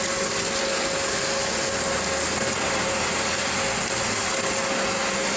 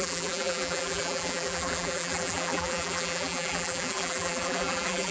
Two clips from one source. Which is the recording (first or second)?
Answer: first